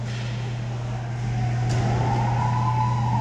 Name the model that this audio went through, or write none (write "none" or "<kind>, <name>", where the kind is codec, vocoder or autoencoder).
none